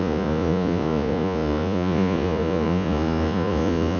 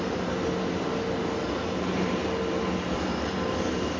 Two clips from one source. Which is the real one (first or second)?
second